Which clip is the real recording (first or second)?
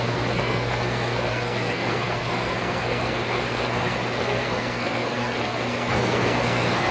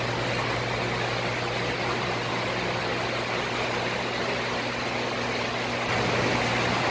second